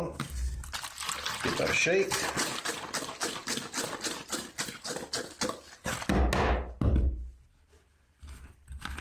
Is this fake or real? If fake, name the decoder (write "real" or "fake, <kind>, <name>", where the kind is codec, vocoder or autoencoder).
real